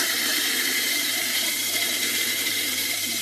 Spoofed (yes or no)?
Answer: yes